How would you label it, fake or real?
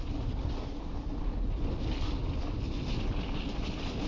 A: real